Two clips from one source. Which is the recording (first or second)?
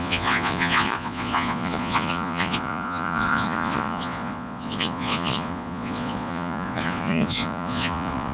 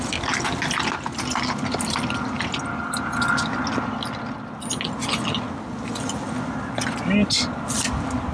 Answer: second